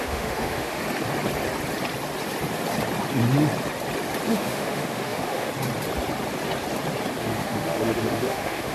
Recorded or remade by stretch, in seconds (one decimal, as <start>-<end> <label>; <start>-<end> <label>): 0.0-0.8 remade; 0.8-4.3 recorded; 4.3-5.5 remade; 5.5-7.2 recorded; 7.2-8.7 remade